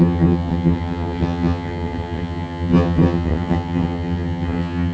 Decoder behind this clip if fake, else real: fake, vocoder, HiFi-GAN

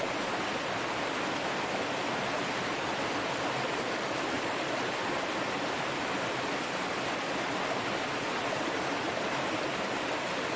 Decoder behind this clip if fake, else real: real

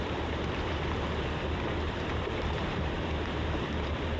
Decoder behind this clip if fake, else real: fake, vocoder, BigVGAN v2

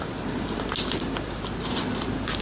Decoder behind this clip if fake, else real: real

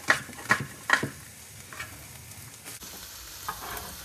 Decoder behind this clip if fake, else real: real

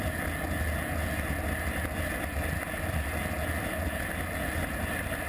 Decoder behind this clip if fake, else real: real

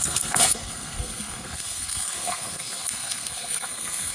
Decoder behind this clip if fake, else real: fake, codec, SNAC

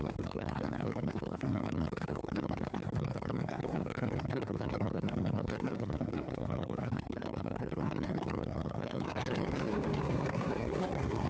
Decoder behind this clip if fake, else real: fake, codec, SNAC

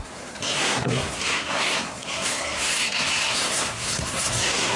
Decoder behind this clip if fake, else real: fake, codec, SNAC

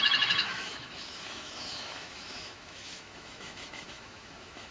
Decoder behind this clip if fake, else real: fake, autoencoder, DAC-VAE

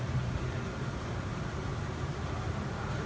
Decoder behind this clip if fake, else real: fake, vocoder, BigVGAN v2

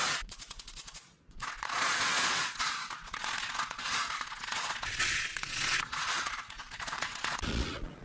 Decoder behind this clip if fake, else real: fake, vocoder, Vocos